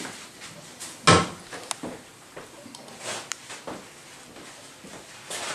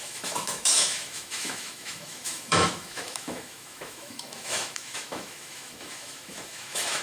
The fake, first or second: second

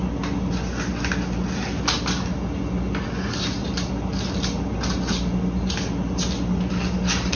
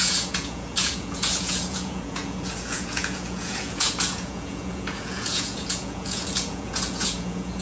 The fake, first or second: second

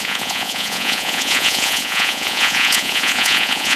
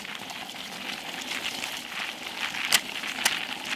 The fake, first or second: first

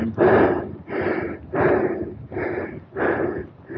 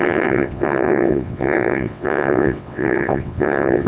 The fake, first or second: second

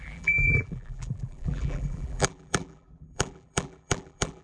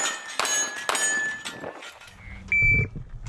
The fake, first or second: first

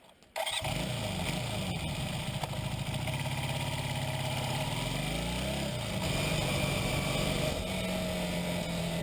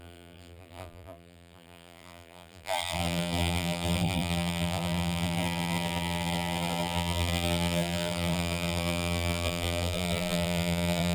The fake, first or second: second